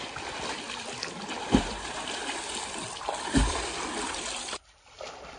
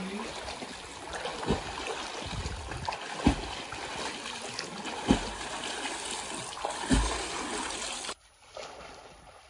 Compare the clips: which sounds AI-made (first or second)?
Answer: first